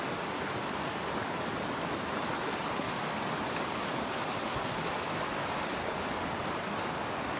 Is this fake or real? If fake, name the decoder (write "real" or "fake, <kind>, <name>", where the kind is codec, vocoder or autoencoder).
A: real